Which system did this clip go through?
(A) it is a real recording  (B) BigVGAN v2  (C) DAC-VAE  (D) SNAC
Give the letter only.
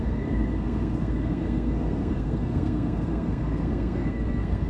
D